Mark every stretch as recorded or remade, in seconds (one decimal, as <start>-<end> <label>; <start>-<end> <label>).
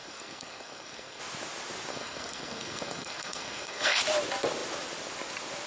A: 0.0-1.2 remade; 1.2-1.9 recorded; 1.9-4.0 remade; 4.0-5.7 recorded